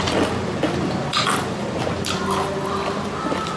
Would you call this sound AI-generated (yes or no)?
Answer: no